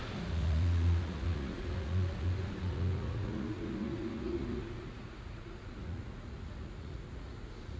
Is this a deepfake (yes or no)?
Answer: yes